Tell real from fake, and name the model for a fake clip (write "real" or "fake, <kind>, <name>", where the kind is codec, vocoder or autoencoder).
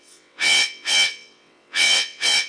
fake, vocoder, WaveNeXt